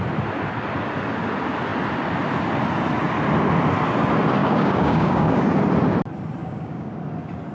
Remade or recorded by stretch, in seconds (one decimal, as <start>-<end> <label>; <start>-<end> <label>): 0.0-4.4 recorded; 4.4-5.4 remade; 5.4-6.4 recorded; 6.4-6.9 remade; 6.9-7.5 recorded